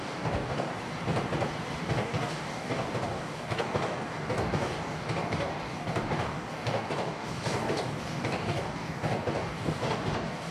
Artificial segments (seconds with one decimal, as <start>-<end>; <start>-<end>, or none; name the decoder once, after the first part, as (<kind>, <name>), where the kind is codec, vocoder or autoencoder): 0.0-0.7 (codec, DAC); 1.8-10.5